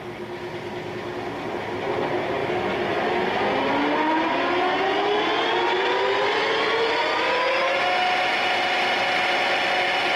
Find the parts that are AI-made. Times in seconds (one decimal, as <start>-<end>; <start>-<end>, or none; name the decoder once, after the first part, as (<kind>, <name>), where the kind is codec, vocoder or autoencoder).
none